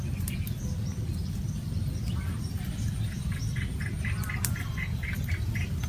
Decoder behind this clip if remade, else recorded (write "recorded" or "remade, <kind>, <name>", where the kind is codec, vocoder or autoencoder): recorded